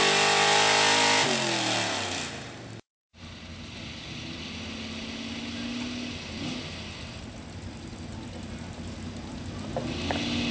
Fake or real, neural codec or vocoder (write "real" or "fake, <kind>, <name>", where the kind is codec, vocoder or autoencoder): real